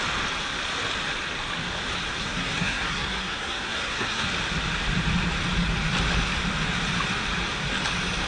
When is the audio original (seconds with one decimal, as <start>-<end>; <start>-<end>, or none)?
0.0-2.2; 4.3-8.3